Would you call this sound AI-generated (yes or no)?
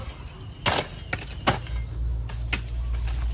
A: no